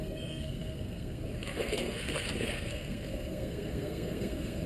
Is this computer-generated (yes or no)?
yes